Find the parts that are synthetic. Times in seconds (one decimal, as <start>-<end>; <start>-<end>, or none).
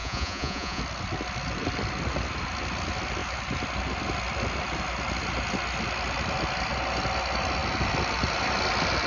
0.0-0.8